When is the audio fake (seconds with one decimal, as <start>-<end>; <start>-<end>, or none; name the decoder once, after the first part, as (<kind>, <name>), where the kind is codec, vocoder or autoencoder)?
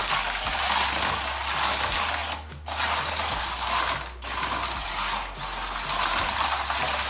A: none